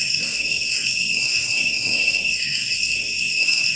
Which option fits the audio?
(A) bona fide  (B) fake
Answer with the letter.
B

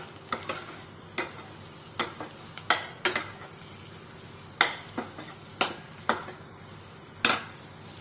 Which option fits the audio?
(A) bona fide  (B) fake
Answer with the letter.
A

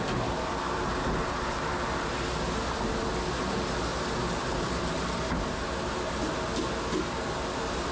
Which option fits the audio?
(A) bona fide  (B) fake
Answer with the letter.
A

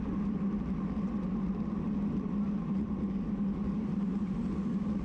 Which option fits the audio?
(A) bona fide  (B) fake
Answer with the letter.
A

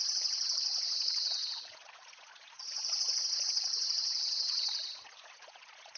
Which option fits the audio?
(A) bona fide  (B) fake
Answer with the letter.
B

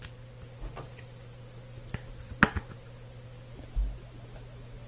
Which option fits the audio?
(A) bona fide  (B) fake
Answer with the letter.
A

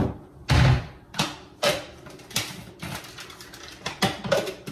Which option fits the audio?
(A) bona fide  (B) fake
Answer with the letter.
A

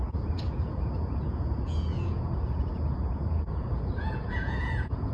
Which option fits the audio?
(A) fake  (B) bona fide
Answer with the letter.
A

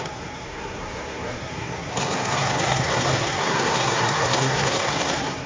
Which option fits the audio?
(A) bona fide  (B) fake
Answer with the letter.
B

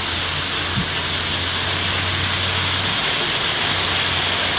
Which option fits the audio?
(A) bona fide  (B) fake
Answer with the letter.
A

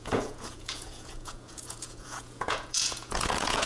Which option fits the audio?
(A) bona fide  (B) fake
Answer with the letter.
B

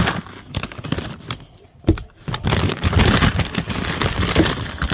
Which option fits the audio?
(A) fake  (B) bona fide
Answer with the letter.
B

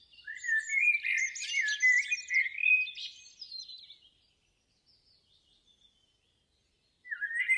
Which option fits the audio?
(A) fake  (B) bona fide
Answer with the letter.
B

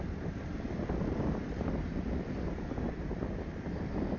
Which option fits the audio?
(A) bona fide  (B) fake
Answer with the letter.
A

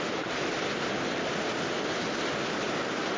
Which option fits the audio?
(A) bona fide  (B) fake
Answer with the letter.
A